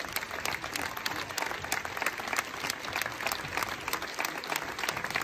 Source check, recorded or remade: recorded